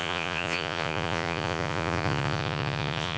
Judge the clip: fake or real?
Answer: fake